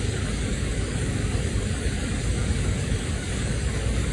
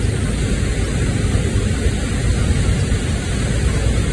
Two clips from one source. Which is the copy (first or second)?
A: first